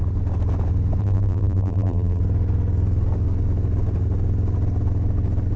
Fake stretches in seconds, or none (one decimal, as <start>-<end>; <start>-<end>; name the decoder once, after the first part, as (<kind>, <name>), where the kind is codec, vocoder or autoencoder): 1.0-2.2 (vocoder, BigVGAN v2)